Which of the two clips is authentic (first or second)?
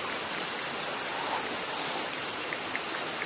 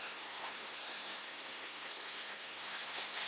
first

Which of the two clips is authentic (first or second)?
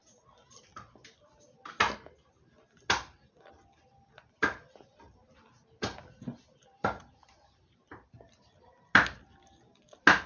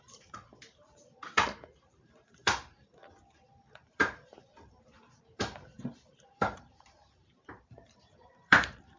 first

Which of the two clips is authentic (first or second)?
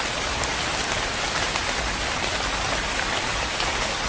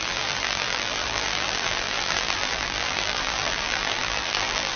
first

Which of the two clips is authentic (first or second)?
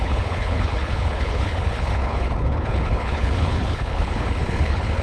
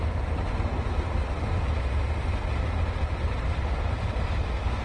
second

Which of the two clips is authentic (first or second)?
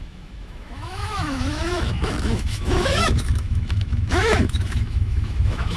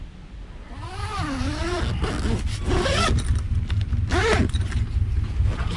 second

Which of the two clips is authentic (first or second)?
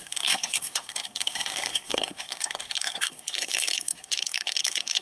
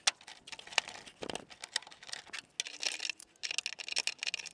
second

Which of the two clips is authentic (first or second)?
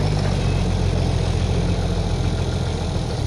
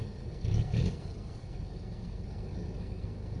first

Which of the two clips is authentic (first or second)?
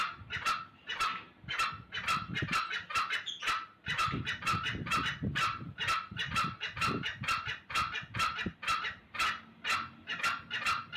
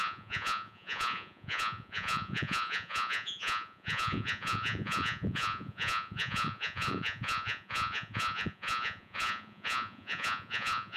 first